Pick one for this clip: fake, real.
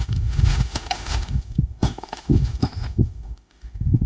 fake